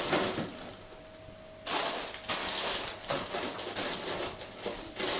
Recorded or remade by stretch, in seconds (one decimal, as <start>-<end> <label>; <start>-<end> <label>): 0.0-5.2 recorded